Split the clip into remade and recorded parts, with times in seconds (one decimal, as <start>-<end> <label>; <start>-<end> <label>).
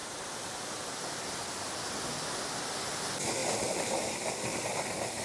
0.0-0.9 remade; 0.9-3.4 recorded; 3.4-4.1 remade; 4.1-5.2 recorded